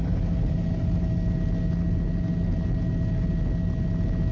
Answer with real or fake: real